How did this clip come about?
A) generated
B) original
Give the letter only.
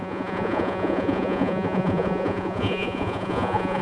A